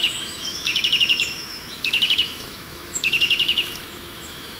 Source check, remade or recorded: remade